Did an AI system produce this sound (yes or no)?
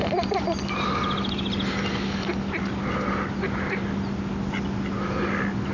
no